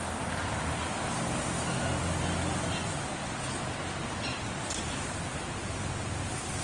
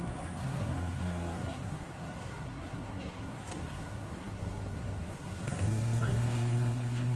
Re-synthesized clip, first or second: second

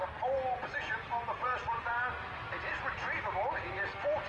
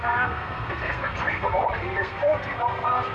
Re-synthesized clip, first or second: second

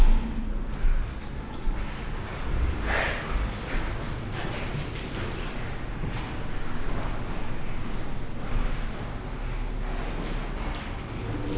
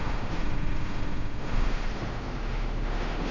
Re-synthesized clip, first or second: second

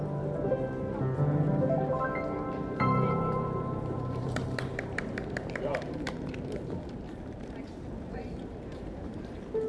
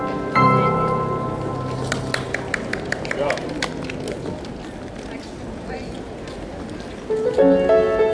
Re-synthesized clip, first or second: first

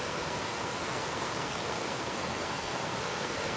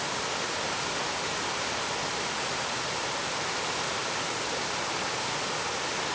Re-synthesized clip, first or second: first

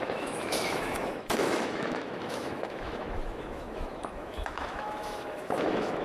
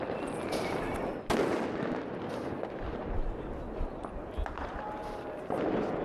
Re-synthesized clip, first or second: first